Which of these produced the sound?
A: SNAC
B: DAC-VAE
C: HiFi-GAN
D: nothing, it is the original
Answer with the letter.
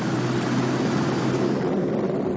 D